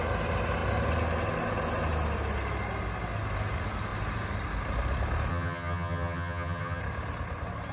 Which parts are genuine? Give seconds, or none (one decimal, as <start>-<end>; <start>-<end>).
0.0-5.3; 6.8-7.7